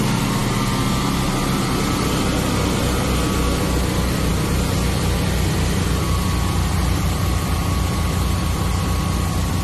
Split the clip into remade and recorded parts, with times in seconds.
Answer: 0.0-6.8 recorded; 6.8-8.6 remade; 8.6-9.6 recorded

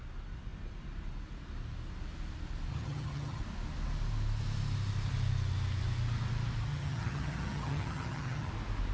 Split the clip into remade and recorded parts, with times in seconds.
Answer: 0.0-2.7 recorded; 2.7-3.4 remade; 3.4-6.7 recorded; 6.7-8.5 remade; 8.5-8.9 recorded